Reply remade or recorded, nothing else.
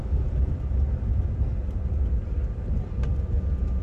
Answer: recorded